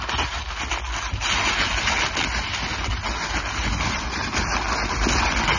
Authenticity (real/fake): real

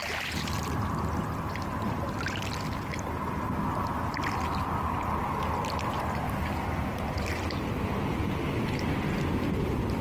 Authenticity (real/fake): real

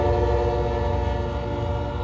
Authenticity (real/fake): real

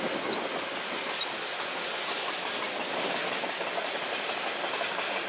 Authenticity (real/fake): real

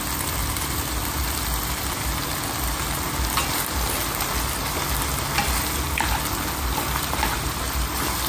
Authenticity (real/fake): real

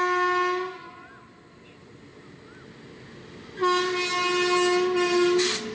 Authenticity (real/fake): real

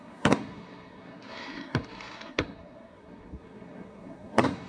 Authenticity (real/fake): fake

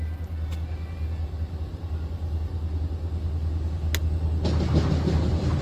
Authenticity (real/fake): real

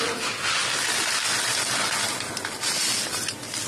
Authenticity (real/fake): real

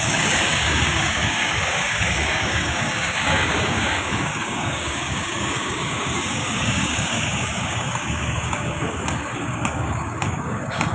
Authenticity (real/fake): fake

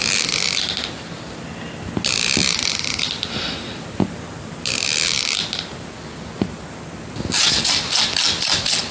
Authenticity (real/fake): real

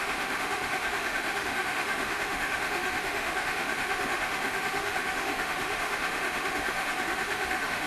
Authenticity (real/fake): fake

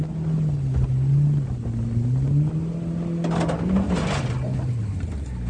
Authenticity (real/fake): real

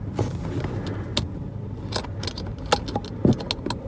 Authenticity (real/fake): real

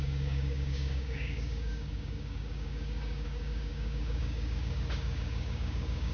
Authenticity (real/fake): fake